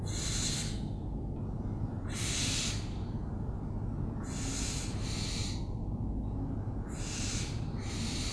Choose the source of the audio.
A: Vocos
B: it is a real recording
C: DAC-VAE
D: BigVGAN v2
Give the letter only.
B